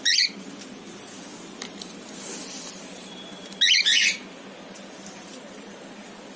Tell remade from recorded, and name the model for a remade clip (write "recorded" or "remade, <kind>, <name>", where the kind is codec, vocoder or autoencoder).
recorded